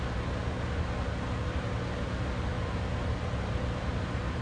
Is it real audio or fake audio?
real